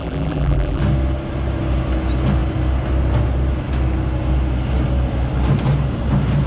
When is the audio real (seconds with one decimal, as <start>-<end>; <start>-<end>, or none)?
0.8-6.5